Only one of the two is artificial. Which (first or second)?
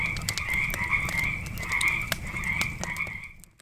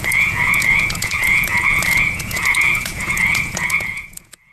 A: second